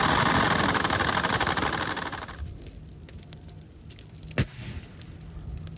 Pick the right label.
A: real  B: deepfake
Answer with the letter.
A